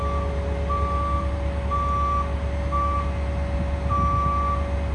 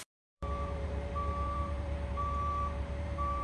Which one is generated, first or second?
second